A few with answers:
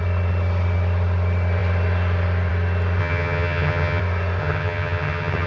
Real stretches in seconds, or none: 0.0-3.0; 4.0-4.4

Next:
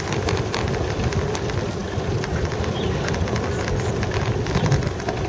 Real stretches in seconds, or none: 0.0-5.3

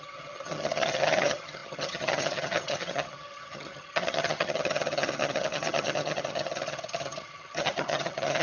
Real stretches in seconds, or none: none

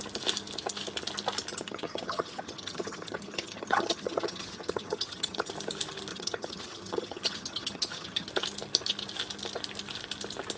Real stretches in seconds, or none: 0.0-1.5; 5.5-6.1; 8.3-10.6

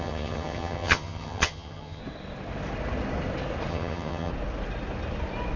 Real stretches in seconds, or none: 2.0-3.7; 4.3-5.6

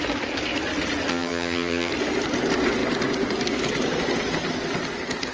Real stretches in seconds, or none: 0.0-1.1; 1.9-5.3

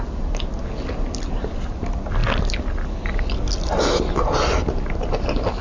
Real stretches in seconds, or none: 0.0-5.6